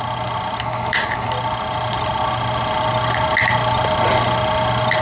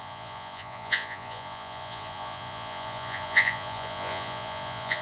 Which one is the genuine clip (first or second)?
first